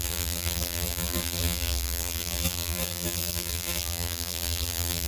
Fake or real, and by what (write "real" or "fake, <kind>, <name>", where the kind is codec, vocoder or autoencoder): fake, vocoder, BigVGAN v2